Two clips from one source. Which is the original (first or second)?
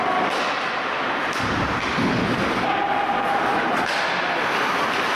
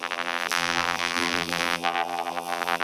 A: first